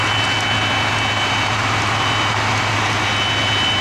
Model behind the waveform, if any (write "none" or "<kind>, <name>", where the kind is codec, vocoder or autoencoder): none